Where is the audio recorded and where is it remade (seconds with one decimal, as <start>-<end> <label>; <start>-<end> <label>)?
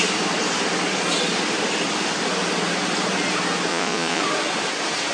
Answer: 0.0-3.7 recorded; 3.7-4.2 remade; 4.2-5.1 recorded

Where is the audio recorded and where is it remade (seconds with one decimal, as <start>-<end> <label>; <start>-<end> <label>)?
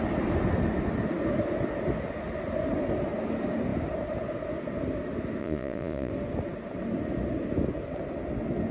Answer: 0.0-5.4 recorded; 5.4-6.1 remade; 6.1-8.7 recorded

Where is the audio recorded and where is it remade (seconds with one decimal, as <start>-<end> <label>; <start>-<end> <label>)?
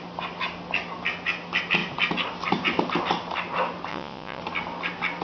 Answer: 0.0-3.9 recorded; 3.9-4.4 remade; 4.4-5.2 recorded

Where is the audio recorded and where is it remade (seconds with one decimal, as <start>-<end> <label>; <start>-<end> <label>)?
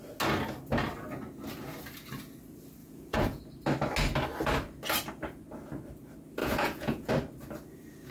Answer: 0.0-2.8 recorded; 2.8-3.4 remade; 3.4-6.4 recorded; 6.4-7.1 remade; 7.1-8.1 recorded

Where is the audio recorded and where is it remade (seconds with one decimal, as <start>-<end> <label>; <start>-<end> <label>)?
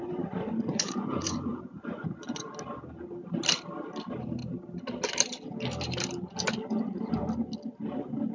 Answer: 0.0-2.5 remade; 2.5-8.3 recorded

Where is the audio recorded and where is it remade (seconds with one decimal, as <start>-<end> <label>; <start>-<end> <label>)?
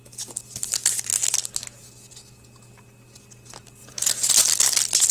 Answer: 0.0-3.8 recorded; 3.8-4.3 remade; 4.3-5.1 recorded